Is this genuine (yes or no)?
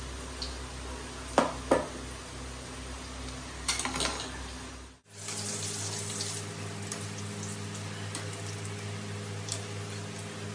yes